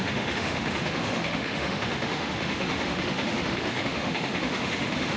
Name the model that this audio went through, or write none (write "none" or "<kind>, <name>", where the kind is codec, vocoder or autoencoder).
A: autoencoder, DAC-VAE